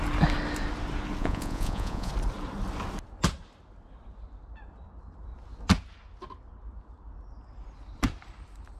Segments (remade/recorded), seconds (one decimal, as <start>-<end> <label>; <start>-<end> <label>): 0.0-1.2 recorded; 1.2-2.1 remade; 2.1-8.8 recorded